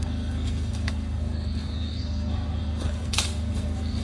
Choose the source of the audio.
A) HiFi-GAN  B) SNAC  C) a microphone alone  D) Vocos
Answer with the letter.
B